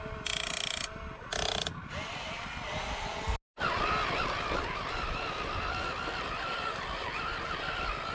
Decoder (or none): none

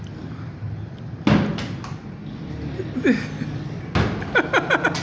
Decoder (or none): none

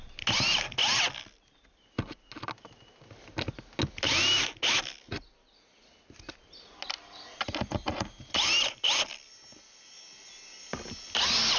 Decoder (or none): none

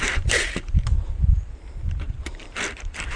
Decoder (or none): vocoder, BigVGAN v2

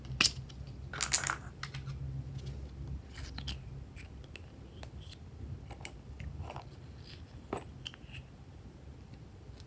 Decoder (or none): none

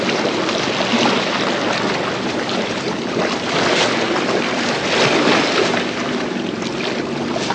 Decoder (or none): none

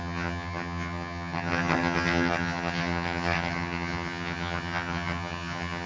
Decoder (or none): vocoder, HiFi-GAN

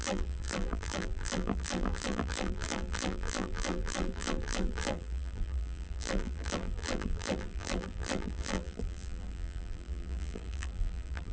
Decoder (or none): vocoder, BigVGAN v2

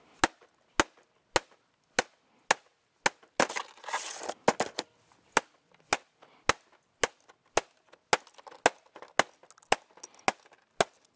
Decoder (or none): none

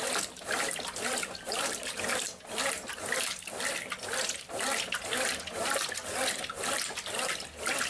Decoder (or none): none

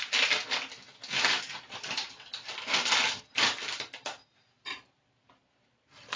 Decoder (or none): none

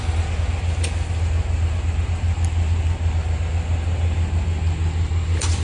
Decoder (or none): none